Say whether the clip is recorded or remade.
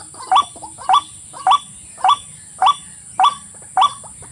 recorded